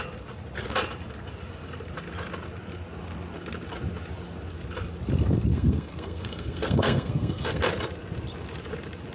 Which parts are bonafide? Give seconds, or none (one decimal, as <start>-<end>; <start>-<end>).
0.0-5.5; 7.6-9.1